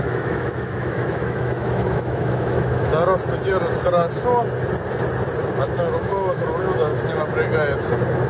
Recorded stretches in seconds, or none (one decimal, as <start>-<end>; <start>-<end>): 2.9-5.6; 6.9-8.3